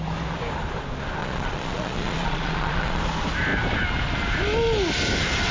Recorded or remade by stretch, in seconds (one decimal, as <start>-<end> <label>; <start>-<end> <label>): 0.0-1.2 recorded; 1.2-3.0 remade; 3.0-5.5 recorded